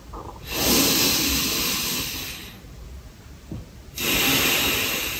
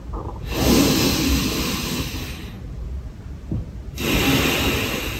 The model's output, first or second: first